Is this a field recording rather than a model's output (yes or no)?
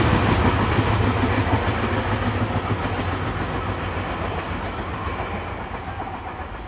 yes